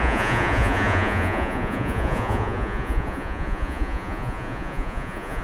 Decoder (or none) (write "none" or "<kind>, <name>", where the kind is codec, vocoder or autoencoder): vocoder, Vocos